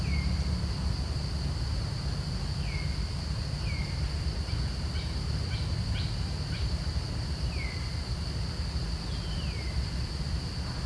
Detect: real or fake real